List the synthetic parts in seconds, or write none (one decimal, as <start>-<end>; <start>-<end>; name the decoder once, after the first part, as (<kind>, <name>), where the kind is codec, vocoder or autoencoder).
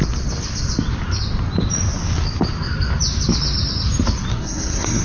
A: 4.3-5.0 (codec, SNAC)